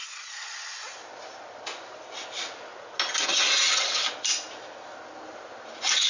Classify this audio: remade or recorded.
recorded